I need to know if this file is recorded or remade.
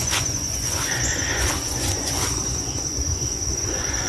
remade